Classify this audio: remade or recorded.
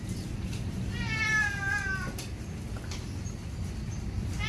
recorded